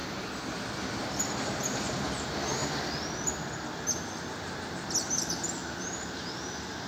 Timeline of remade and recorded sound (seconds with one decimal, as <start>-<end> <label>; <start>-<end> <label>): 0.0-1.0 recorded; 1.0-2.6 remade; 2.6-5.1 recorded; 5.1-6.9 remade